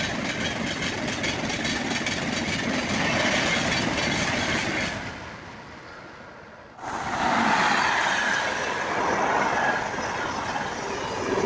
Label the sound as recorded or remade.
recorded